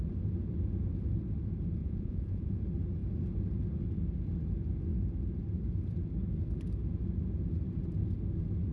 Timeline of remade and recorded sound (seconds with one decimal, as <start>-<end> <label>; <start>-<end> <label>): 0.0-1.8 recorded; 1.8-2.6 remade; 2.6-8.7 recorded

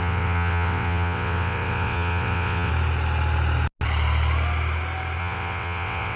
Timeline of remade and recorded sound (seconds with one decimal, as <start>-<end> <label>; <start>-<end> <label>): 0.0-2.7 remade; 2.7-5.2 recorded; 5.2-6.2 remade

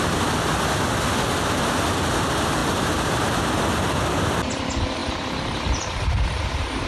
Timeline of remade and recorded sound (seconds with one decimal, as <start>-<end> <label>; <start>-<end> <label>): 0.0-2.6 recorded; 2.6-4.5 remade; 4.5-5.0 recorded; 5.0-6.0 remade; 6.0-6.9 recorded

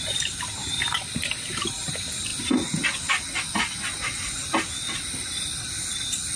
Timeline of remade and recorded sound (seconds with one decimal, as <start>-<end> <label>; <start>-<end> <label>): 0.0-0.6 recorded; 0.6-1.9 remade; 1.9-6.4 recorded

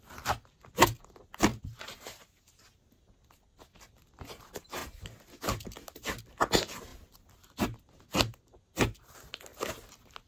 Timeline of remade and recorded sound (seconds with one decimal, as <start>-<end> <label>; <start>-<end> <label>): 0.0-1.5 recorded; 1.5-2.5 remade; 2.5-10.3 recorded

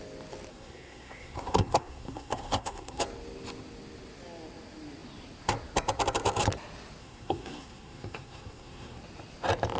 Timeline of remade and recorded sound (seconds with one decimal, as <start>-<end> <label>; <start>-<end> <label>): 0.0-0.5 recorded; 0.5-3.0 remade; 3.0-7.0 recorded; 7.0-9.0 remade; 9.0-9.8 recorded